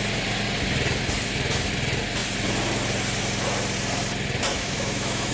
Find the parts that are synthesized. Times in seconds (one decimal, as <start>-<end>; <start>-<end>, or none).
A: 4.5-5.3